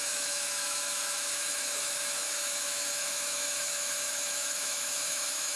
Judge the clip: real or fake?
fake